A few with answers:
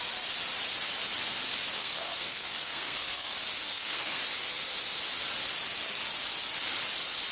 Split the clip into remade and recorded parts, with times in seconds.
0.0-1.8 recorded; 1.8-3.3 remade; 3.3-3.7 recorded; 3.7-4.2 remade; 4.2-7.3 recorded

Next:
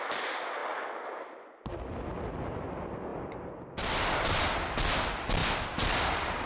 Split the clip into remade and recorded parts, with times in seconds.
0.0-6.5 recorded

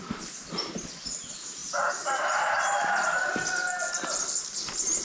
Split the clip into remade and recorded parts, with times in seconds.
0.0-5.0 recorded

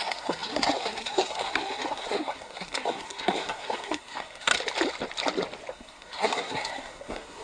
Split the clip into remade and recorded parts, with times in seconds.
0.0-4.5 remade; 4.5-5.7 recorded; 5.7-7.4 remade

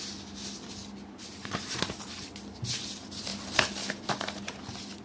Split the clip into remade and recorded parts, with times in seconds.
0.0-5.0 recorded

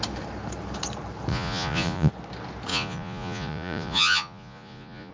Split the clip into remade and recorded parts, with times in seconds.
0.0-1.3 recorded; 1.3-2.1 remade; 2.1-2.7 recorded; 2.7-5.1 remade

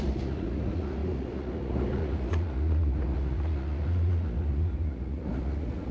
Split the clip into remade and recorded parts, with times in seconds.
0.0-5.9 remade